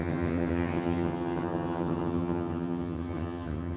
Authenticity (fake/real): fake